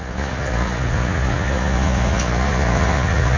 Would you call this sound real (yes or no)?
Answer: no